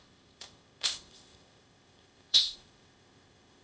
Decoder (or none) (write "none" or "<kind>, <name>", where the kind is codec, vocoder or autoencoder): codec, ZipCodec